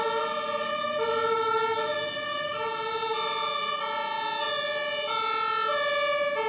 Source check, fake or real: real